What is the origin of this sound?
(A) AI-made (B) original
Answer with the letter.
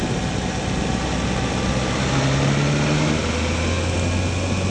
B